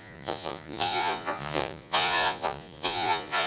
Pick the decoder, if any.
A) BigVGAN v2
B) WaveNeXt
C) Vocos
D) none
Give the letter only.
C